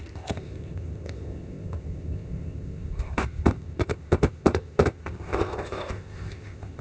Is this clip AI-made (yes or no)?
yes